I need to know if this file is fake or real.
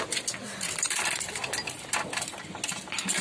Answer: real